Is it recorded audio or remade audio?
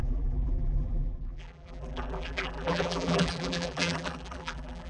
remade